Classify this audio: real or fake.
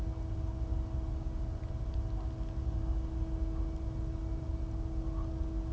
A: real